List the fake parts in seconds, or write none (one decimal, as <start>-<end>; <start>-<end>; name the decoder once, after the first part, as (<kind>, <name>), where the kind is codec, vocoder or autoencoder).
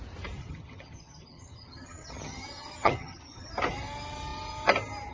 0.4-3.5 (vocoder, HiFi-GAN)